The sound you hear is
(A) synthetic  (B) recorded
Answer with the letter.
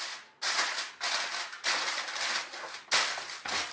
B